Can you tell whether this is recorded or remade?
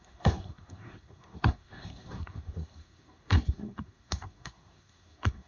remade